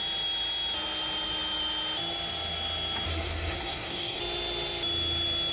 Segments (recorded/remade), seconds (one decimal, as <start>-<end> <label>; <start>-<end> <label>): 0.0-3.1 recorded; 3.1-4.2 remade; 4.2-5.5 recorded